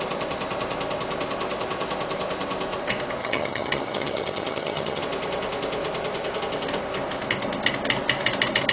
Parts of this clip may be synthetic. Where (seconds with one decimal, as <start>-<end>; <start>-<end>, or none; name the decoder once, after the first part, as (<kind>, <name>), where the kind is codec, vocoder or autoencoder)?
3.2-5.0 (vocoder, HiFi-GAN)